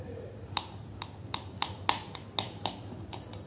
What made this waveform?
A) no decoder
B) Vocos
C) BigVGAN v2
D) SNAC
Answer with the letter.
A